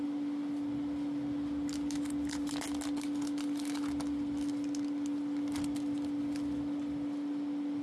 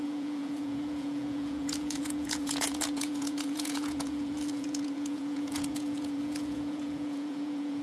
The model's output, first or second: second